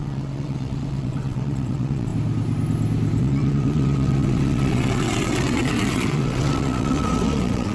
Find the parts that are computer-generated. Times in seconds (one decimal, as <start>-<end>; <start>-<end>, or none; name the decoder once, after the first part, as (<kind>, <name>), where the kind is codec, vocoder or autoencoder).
0.0-2.1 (vocoder, WaveNeXt); 3.2-7.7